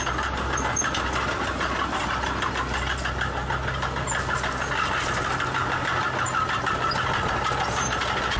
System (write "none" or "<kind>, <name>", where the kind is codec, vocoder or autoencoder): none